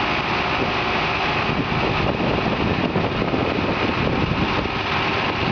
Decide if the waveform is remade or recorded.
recorded